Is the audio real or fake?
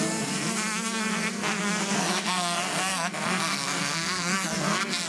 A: fake